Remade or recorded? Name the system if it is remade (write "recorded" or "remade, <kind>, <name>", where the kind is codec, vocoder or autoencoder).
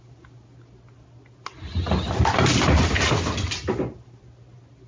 recorded